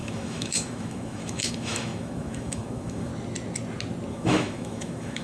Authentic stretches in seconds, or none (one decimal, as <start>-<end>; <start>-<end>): 3.1-4.1